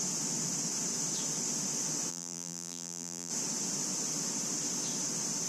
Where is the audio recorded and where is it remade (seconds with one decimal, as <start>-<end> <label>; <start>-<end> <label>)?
0.0-2.1 recorded; 2.1-3.3 remade; 3.3-5.5 recorded